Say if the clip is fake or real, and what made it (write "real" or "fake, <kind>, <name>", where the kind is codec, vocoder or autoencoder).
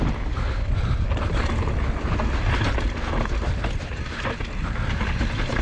real